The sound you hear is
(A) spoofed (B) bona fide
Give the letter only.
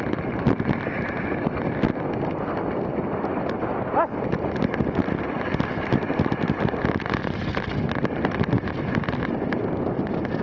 B